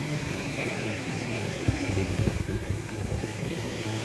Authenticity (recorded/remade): remade